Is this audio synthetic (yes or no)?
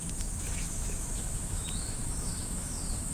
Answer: yes